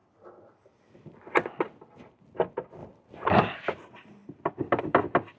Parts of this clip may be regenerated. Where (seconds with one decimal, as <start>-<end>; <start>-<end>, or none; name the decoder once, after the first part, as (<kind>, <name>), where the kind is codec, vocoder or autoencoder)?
none